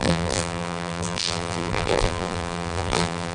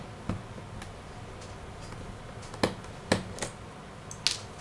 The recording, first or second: second